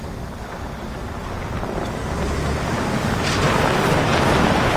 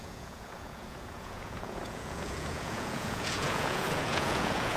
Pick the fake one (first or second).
second